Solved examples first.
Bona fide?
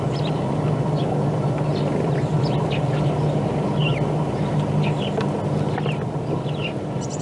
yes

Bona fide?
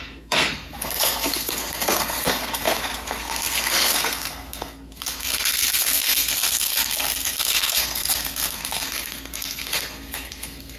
no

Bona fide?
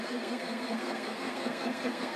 no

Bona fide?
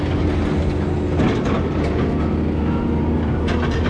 yes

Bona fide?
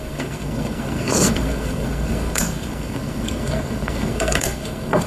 no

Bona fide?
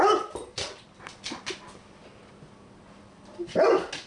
yes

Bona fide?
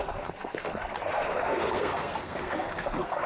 no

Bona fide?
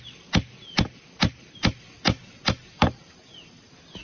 yes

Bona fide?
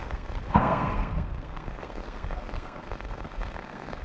no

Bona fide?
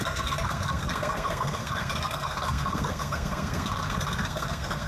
no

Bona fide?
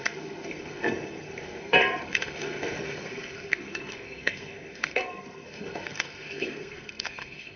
no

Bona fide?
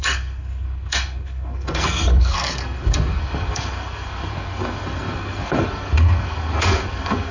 no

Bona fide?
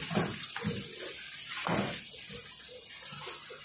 yes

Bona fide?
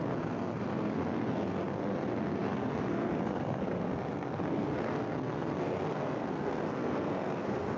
no